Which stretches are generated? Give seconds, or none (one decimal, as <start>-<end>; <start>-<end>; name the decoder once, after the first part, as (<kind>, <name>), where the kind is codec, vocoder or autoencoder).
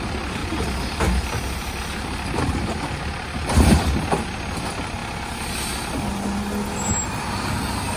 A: 0.4-4.5 (vocoder, BigVGAN v2)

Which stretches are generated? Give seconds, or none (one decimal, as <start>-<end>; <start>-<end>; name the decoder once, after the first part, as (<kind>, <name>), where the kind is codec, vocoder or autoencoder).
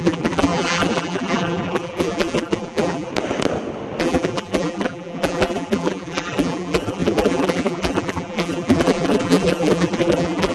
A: 0.0-3.1 (vocoder, BigVGAN v2); 4.0-10.5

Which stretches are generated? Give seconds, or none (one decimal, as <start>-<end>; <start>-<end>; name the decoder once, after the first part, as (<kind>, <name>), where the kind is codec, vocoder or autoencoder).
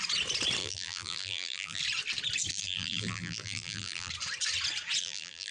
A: 0.6-1.8 (vocoder, BigVGAN v2); 2.5-4.1; 5.0-5.5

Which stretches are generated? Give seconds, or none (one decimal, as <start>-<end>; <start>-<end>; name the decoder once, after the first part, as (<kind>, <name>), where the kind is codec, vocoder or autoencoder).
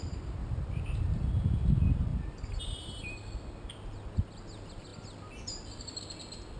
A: 0.4-1.3 (vocoder, BigVGAN v2); 2.1-3.3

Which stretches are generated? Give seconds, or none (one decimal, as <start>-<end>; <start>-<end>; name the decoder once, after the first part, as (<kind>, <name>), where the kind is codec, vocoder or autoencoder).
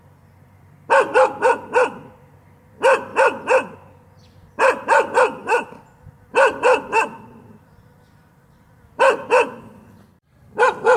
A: 0.0-3.1 (vocoder, BigVGAN v2); 4.2-5.4; 6.2-11.0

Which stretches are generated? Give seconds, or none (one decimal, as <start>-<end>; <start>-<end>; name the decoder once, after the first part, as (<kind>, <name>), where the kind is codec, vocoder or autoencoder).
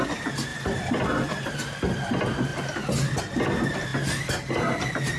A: 0.5-1.6 (vocoder, BigVGAN v2)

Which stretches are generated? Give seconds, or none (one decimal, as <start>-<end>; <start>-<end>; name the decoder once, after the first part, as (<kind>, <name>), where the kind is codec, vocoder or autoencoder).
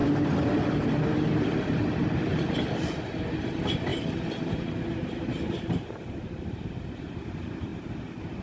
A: 1.0-3.9 (vocoder, BigVGAN v2); 4.5-8.4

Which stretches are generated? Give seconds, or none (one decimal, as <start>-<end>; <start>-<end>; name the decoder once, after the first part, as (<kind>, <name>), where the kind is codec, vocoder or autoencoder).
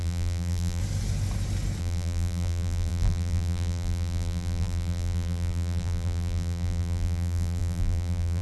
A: 0.0-0.8 (vocoder, BigVGAN v2); 1.8-8.4